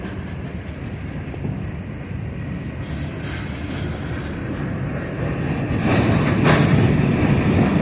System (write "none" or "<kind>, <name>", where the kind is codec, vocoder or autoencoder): none